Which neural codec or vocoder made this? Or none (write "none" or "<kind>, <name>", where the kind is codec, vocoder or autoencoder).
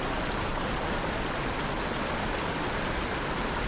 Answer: none